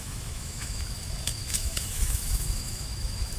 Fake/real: fake